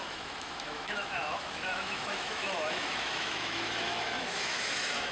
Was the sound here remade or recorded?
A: remade